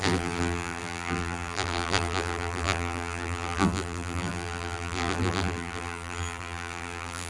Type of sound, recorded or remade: remade